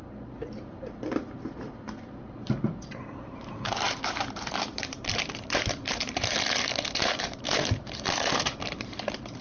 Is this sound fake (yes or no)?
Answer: yes